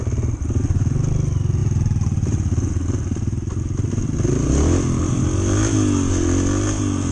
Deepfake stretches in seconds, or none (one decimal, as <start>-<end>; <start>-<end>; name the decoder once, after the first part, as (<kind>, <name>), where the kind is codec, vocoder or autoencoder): none